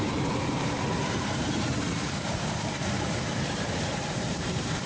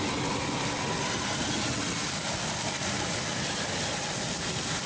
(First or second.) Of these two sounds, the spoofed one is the first